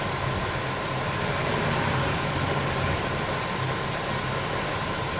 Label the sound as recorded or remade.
recorded